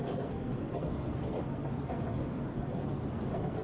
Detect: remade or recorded remade